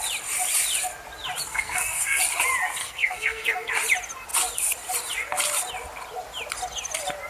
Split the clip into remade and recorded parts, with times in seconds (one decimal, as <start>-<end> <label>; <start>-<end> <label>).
0.0-1.5 recorded; 1.5-2.2 remade; 2.2-2.8 recorded; 2.8-3.7 remade; 3.7-7.3 recorded